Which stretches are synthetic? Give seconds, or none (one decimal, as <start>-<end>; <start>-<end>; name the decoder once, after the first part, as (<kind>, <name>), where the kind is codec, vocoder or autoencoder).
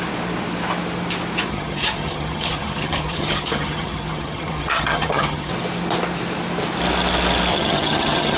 1.5-5.5 (vocoder, HiFi-GAN); 7.5-8.4